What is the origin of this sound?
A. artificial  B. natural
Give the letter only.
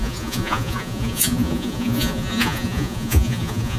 A